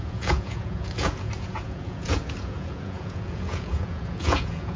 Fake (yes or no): yes